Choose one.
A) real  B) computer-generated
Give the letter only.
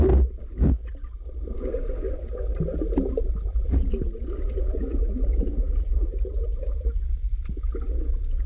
A